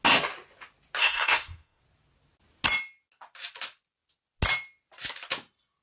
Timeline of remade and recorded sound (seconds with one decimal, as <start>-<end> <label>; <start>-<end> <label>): 0.0-1.0 recorded; 1.0-1.8 remade; 1.8-5.8 recorded